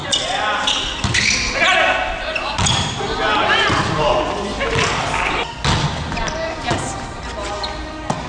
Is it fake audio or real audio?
real